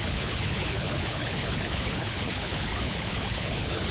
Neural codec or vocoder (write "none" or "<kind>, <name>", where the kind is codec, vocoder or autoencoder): codec, HILCodec